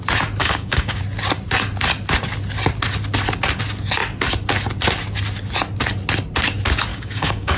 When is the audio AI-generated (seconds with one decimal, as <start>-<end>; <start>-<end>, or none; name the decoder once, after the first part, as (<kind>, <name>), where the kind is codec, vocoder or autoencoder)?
0.4-1.0 (codec, DAC); 6.9-7.6